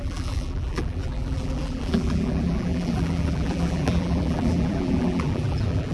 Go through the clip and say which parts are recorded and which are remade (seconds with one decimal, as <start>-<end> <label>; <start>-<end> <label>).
0.0-5.9 remade